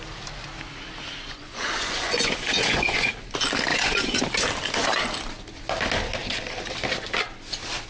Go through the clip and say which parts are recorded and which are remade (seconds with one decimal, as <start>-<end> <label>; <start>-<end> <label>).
0.0-1.3 recorded; 1.3-3.1 remade; 3.1-3.7 recorded; 3.7-4.2 remade; 4.2-7.9 recorded